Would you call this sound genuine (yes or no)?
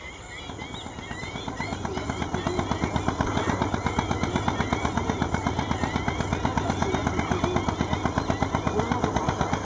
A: yes